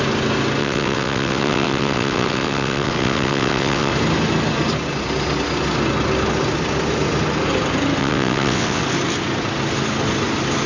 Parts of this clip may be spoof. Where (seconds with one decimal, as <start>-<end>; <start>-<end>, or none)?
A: 0.6-3.9; 8.0-8.8